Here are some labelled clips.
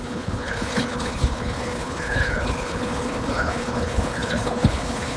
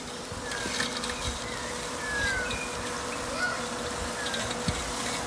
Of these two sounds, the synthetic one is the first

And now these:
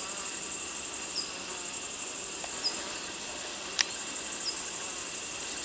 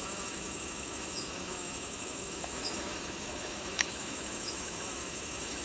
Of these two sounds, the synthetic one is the second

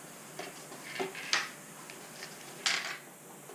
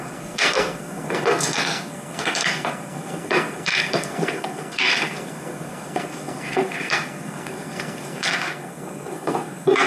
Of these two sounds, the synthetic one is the second